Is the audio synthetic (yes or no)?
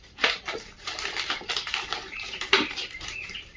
yes